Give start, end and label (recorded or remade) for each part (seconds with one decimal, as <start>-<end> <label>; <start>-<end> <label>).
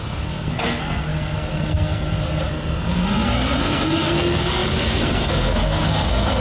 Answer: 0.0-6.4 remade